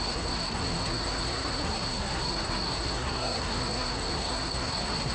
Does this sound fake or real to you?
fake